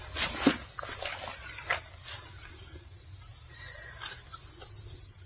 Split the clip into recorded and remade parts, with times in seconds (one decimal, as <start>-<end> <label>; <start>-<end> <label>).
0.0-5.3 recorded